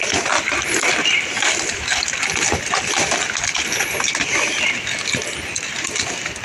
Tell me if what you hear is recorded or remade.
recorded